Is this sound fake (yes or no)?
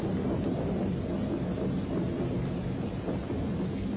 no